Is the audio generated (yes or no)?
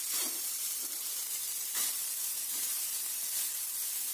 yes